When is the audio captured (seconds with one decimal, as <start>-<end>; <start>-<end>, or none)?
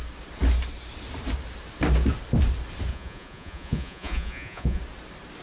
0.0-2.9; 4.8-5.4